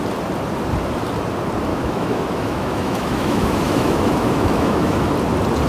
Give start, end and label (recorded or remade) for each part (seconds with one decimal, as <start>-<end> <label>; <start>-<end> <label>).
0.0-1.7 recorded; 1.7-5.1 remade; 5.1-5.7 recorded